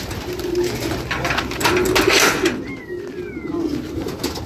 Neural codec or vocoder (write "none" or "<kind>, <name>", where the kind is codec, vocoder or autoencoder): none